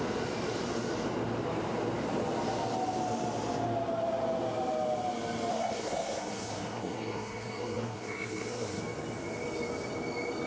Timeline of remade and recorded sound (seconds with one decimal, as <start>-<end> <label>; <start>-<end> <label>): 0.0-5.5 recorded; 5.5-8.8 remade; 8.8-10.5 recorded